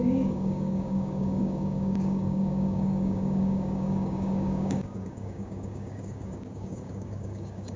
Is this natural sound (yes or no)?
no